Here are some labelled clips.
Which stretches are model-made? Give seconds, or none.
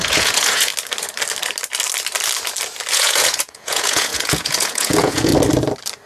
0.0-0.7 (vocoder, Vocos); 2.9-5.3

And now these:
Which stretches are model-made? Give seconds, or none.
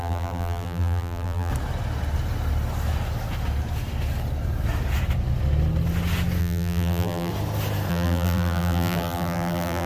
0.0-1.5 (vocoder, BigVGAN v2); 6.4-7.3; 7.9-9.9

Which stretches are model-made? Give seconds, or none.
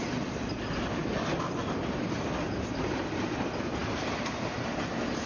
none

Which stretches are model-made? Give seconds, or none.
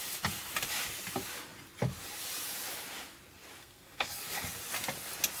3.6-4.1 (codec, SNAC)